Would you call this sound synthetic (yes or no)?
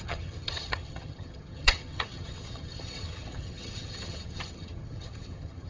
yes